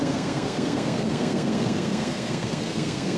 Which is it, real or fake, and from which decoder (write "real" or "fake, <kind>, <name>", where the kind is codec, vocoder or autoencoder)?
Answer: fake, codec, SNAC